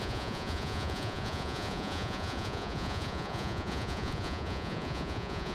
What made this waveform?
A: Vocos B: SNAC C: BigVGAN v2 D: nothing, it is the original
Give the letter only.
A